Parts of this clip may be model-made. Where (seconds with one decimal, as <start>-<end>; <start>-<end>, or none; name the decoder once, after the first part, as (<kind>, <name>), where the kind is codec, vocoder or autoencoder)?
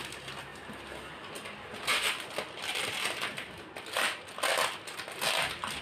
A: none